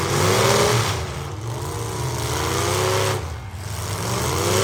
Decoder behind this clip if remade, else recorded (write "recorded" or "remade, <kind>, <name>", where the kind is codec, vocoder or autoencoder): recorded